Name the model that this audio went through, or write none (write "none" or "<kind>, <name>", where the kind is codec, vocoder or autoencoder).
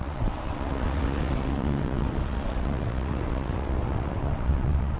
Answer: vocoder, WaveNeXt